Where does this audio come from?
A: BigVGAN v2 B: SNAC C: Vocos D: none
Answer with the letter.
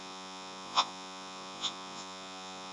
C